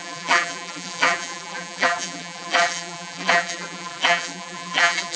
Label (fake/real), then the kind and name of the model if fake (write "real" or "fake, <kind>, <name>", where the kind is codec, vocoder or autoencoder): fake, vocoder, BigVGAN v2